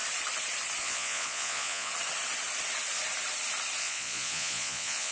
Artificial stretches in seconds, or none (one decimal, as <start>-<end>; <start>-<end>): 0.8-1.9; 3.8-5.1